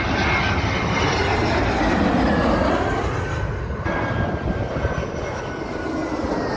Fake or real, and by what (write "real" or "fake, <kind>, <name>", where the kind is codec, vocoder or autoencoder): real